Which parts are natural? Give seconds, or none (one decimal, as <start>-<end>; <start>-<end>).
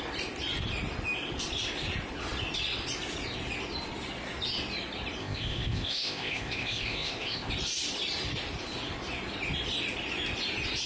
0.0-5.2; 7.5-10.9